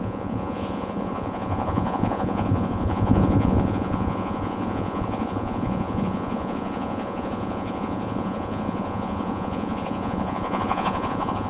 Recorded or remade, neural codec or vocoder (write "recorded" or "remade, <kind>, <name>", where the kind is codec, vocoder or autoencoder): remade, vocoder, Vocos